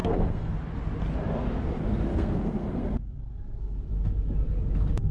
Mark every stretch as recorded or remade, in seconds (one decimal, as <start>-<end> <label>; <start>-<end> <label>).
0.0-0.5 remade; 0.5-2.1 recorded; 2.1-3.9 remade; 3.9-5.1 recorded